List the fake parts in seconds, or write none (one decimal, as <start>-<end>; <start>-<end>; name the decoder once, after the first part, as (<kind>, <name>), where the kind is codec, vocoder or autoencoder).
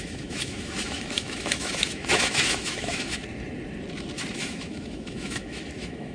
0.0-3.2 (autoencoder, DAC-VAE); 4.4-6.1